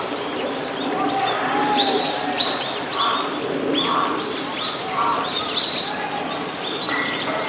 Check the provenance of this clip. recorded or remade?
recorded